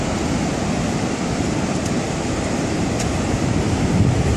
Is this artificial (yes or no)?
yes